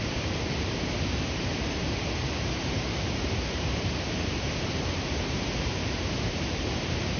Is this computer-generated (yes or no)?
yes